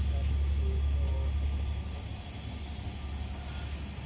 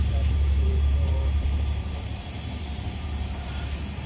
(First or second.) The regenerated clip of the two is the second